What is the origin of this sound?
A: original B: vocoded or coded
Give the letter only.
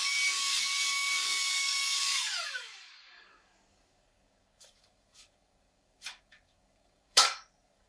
B